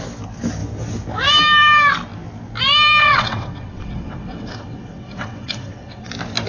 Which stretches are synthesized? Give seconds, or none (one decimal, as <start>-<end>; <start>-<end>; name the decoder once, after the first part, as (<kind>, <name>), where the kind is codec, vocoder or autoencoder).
3.0-6.1 (vocoder, WaveNeXt)